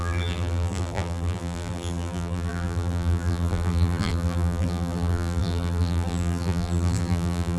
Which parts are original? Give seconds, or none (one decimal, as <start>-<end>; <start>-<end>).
none